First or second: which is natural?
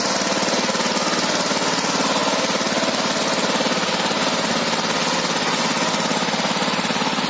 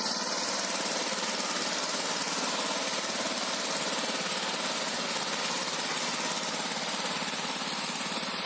first